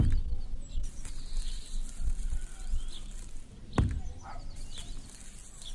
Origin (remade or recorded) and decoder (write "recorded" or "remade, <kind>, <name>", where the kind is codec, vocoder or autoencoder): recorded